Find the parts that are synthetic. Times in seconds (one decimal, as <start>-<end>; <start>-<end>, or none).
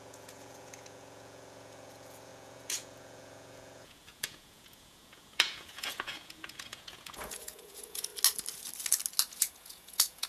0.0-8.1; 9.3-10.3